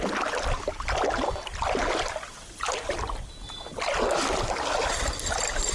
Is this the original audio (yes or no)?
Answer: yes